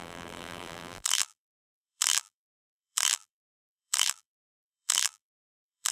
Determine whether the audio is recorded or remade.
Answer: remade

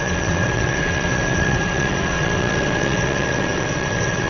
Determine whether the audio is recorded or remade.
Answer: remade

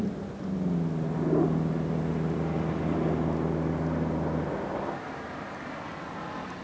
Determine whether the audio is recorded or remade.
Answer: recorded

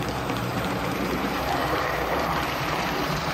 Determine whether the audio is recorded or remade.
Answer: remade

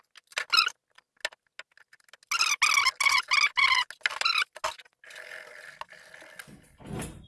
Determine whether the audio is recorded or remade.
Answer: recorded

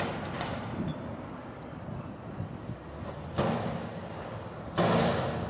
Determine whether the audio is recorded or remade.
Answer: recorded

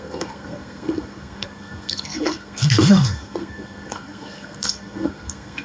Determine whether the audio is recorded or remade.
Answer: remade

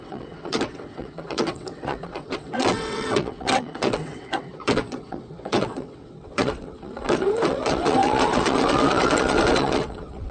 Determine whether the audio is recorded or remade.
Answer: remade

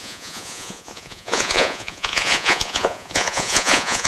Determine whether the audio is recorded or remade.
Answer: remade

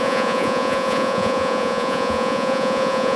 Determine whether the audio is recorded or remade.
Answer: remade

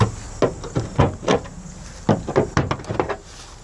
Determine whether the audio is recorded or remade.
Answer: recorded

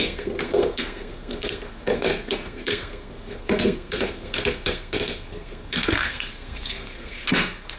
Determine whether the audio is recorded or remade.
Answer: remade